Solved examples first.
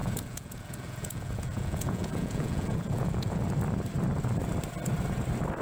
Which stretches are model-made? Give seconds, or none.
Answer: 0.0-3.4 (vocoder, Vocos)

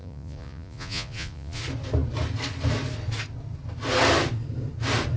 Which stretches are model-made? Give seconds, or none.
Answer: 0.0-1.6 (vocoder, Vocos)

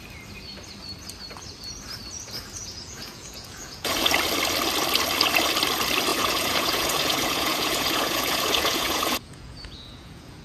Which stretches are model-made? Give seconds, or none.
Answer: 2.6-4.1 (vocoder, Vocos); 6.1-10.4